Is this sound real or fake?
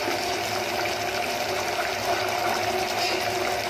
real